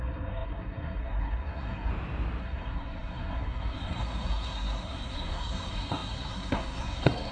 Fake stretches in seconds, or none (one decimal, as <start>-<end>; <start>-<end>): 0.0-1.9; 2.4-7.3